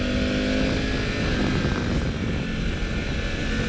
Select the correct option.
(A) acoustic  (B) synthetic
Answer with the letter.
A